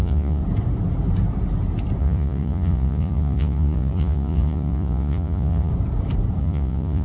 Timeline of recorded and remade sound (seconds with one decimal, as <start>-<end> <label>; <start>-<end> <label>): 0.0-0.4 remade; 0.4-2.0 recorded; 2.0-5.7 remade; 5.7-6.4 recorded; 6.4-7.0 remade